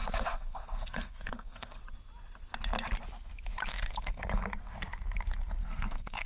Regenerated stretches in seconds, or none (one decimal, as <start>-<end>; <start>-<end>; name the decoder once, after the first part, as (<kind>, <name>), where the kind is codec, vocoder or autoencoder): 0.0-1.8 (codec, SNAC); 3.7-4.2; 5.6-6.3